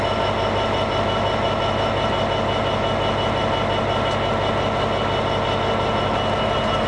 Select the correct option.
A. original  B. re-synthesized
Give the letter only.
A